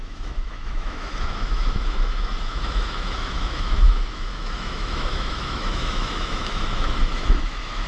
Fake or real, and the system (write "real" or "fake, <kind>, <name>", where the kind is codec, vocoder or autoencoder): fake, autoencoder, DAC-VAE